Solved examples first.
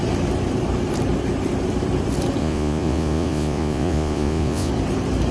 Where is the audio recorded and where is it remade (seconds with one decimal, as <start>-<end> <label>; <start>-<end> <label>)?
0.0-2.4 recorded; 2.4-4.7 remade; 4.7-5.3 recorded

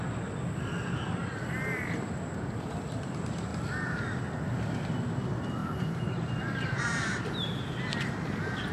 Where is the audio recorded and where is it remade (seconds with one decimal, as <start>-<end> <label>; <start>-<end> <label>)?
0.0-5.6 recorded; 5.6-8.7 remade

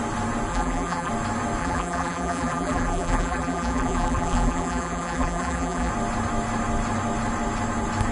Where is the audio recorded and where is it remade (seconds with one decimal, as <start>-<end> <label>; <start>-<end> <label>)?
0.0-0.5 recorded; 0.5-1.1 remade; 1.1-1.6 recorded; 1.6-5.9 remade; 5.9-8.1 recorded